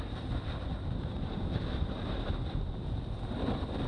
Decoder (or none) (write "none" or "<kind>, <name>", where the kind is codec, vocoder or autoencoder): none